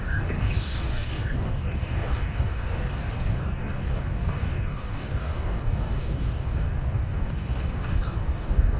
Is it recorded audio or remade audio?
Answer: remade